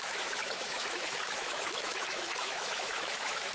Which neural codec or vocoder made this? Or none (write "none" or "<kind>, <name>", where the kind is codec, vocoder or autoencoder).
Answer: autoencoder, DAC-VAE